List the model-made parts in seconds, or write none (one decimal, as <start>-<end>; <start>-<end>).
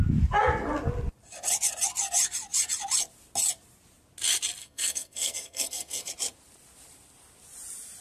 4.6-6.1